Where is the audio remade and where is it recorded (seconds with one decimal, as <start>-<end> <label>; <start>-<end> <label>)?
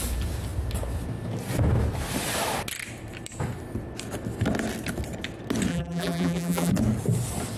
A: 0.0-5.7 recorded; 5.7-6.7 remade; 6.7-7.6 recorded